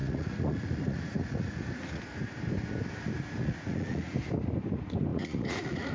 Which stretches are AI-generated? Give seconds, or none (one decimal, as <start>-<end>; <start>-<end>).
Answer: 0.0-2.0; 3.4-4.1; 5.1-5.9